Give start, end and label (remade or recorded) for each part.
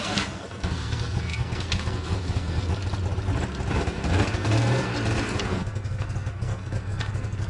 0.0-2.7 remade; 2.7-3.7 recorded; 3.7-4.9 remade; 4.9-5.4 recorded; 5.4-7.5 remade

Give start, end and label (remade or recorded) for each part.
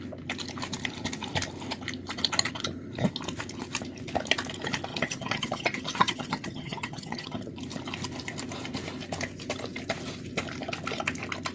0.0-4.9 recorded; 4.9-7.5 remade; 7.5-11.5 recorded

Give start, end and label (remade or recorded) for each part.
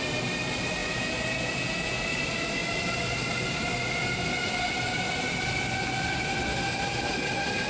0.0-0.8 recorded; 0.8-2.0 remade; 2.0-7.7 recorded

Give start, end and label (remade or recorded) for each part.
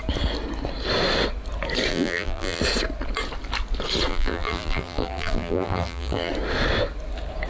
0.0-1.9 recorded; 1.9-2.6 remade; 2.6-4.1 recorded; 4.1-6.3 remade; 6.3-7.5 recorded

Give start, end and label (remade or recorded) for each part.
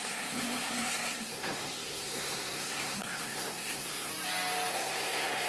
0.0-4.1 remade; 4.1-4.7 recorded; 4.7-5.5 remade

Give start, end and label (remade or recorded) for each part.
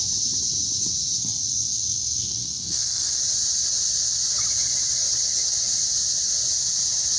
0.0-1.2 recorded; 1.2-3.2 remade; 3.2-7.2 recorded